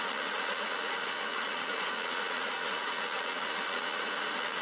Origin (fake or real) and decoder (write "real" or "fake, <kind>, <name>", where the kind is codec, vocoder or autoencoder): fake, vocoder, Vocos